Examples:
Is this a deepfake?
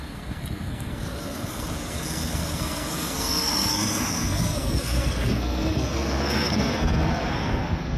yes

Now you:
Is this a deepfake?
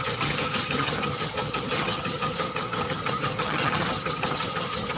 yes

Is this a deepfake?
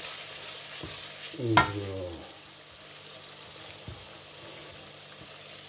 no